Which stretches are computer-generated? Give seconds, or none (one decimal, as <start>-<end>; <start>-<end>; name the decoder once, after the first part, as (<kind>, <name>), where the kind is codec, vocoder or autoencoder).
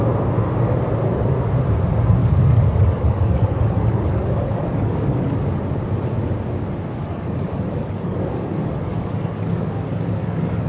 2.2-5.4 (codec, DAC); 7.0-10.7